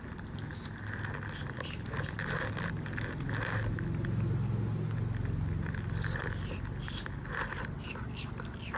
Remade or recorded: recorded